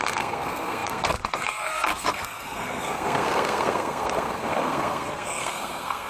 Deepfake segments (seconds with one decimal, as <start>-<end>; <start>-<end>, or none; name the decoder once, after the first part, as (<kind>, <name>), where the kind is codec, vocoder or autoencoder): 0.0-6.1 (codec, SNAC)